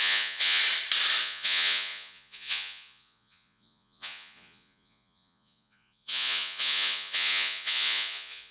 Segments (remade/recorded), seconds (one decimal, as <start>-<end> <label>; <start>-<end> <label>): 0.0-0.6 remade; 0.6-1.2 recorded; 1.2-8.5 remade